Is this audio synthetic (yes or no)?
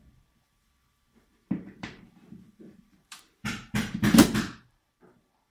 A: yes